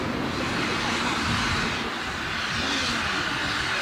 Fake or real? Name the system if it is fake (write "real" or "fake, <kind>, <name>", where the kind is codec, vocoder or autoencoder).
real